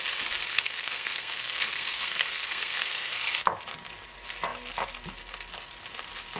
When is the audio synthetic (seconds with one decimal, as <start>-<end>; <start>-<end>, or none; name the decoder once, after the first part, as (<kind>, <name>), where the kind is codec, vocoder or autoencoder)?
0.5-3.3 (codec, SNAC)